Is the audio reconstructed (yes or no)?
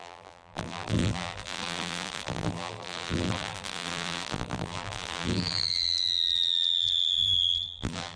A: yes